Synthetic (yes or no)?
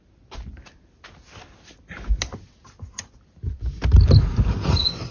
no